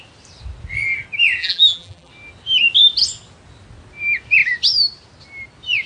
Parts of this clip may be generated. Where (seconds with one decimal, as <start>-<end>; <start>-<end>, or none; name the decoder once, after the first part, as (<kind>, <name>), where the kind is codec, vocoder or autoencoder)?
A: 1.4-2.1 (vocoder, BigVGAN v2)